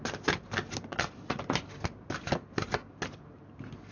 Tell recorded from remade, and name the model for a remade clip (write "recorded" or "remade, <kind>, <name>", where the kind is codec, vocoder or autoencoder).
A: recorded